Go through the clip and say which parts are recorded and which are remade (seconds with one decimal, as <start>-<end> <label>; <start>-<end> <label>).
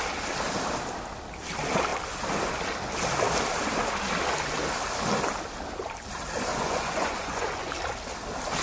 0.0-6.5 recorded; 6.5-7.7 remade; 7.7-8.6 recorded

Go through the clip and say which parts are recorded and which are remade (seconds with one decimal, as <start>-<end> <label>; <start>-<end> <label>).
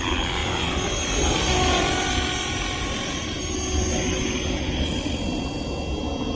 0.0-6.4 recorded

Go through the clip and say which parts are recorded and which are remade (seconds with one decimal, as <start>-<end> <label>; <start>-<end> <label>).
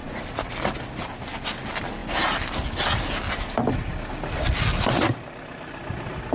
0.0-0.5 remade; 0.5-6.3 recorded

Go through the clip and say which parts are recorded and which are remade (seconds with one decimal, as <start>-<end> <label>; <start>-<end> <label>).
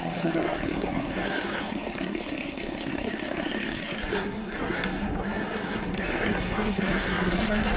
0.0-7.8 remade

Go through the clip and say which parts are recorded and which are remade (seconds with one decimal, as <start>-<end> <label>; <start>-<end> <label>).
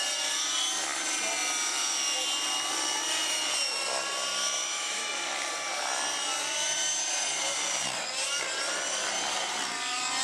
0.0-4.6 recorded; 4.6-5.1 remade; 5.1-10.2 recorded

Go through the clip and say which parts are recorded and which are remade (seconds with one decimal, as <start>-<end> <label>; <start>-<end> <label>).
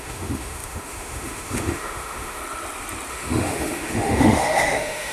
0.0-2.4 remade; 2.4-3.1 recorded; 3.1-5.1 remade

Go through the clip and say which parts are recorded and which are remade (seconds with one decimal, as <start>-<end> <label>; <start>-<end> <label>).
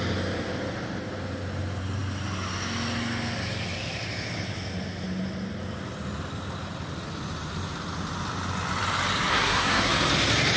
0.0-9.3 recorded; 9.3-9.9 remade; 9.9-10.6 recorded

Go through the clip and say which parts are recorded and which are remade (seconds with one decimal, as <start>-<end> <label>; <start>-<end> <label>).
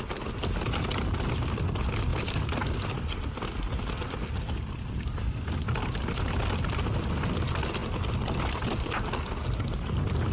0.0-10.3 recorded